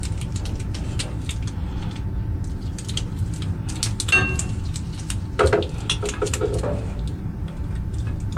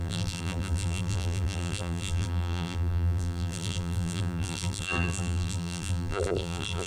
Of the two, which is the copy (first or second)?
second